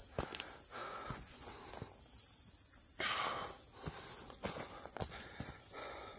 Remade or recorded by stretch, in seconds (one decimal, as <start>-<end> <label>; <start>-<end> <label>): 0.0-0.8 recorded; 0.8-1.6 remade; 1.6-4.2 recorded; 4.2-6.2 remade